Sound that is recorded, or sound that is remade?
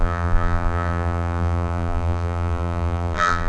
remade